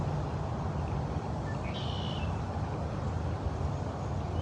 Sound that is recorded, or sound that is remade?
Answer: recorded